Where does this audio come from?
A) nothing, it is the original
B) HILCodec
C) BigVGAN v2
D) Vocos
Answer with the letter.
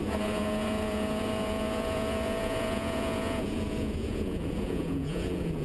D